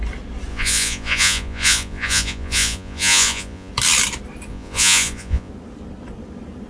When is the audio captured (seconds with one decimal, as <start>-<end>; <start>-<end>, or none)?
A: 0.0-0.5; 3.7-4.5; 5.5-6.7